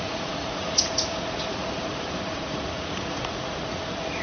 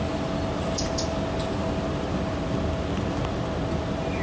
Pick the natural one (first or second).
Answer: second